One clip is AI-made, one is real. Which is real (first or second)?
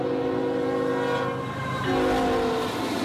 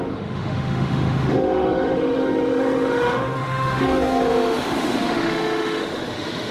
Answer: first